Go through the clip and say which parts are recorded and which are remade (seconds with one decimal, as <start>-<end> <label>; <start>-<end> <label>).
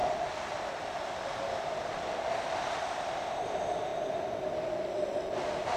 0.0-3.4 remade; 3.4-3.9 recorded; 3.9-4.6 remade; 4.6-5.8 recorded